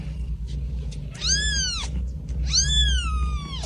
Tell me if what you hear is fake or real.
real